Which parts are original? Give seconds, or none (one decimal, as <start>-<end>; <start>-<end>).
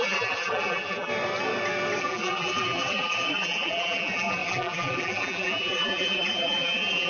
1.1-2.0